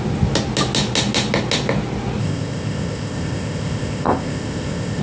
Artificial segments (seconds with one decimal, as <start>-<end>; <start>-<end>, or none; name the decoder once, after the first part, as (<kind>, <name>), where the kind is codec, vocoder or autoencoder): 2.2-5.0 (codec, ZipCodec)